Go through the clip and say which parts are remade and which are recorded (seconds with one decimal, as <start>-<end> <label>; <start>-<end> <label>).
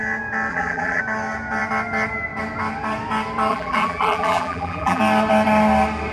0.0-0.5 recorded; 0.5-1.0 remade; 1.0-3.5 recorded; 3.5-5.0 remade; 5.0-6.1 recorded